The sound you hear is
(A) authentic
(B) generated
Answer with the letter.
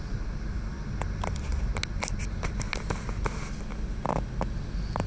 A